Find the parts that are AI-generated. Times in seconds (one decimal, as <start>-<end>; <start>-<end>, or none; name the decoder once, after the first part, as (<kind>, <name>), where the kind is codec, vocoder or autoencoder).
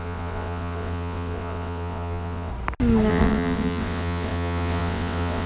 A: 0.0-2.5 (vocoder, WaveNeXt); 3.1-5.5